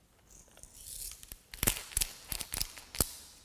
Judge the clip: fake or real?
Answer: real